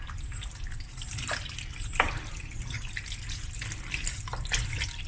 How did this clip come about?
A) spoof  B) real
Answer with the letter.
B